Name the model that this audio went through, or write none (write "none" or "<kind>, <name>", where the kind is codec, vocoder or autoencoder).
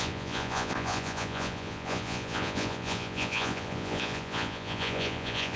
vocoder, Vocos